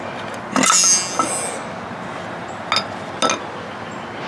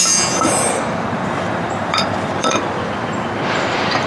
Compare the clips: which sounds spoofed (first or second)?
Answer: second